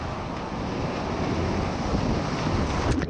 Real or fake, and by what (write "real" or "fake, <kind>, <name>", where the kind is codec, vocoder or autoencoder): real